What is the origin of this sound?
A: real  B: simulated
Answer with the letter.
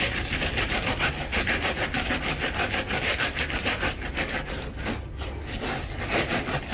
A